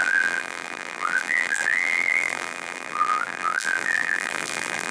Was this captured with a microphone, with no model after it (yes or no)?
no